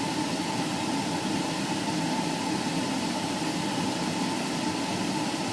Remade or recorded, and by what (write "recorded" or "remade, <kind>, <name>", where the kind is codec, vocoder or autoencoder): recorded